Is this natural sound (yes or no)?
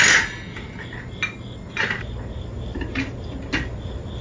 yes